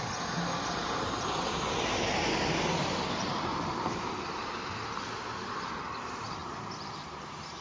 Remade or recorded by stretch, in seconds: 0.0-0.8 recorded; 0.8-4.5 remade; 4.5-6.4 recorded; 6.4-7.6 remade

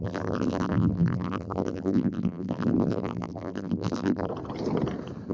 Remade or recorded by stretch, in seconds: 0.0-4.3 remade; 4.3-5.3 recorded